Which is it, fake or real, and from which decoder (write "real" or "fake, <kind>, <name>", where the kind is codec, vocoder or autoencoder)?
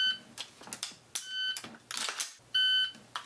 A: real